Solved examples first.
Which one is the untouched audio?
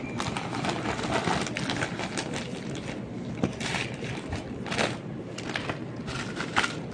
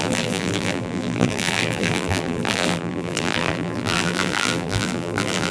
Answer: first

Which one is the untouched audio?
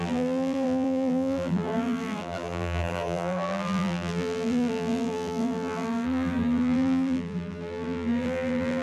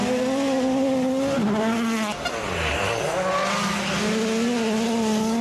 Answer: second